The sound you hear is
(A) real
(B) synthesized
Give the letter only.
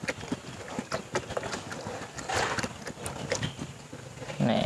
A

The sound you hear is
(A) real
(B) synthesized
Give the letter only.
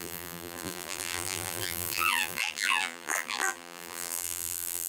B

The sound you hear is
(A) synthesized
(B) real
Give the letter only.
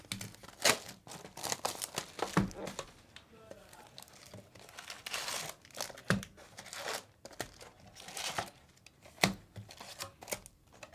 B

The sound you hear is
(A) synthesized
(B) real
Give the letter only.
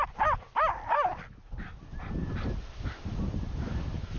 B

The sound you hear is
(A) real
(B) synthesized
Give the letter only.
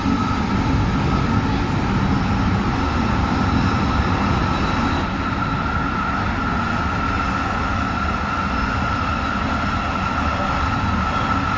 A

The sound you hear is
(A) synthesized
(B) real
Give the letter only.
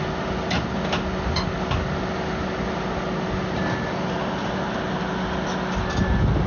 B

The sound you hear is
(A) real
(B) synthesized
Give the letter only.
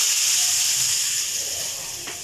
A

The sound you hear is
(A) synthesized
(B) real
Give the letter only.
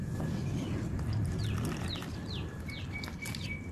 B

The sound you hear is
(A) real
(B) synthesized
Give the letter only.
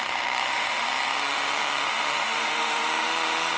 B